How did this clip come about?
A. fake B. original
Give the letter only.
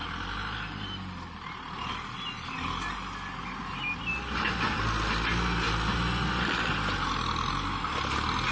B